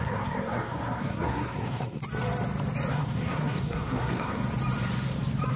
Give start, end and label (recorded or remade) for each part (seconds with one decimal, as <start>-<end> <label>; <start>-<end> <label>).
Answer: 0.0-2.0 remade; 2.0-2.9 recorded; 2.9-4.4 remade; 4.4-5.6 recorded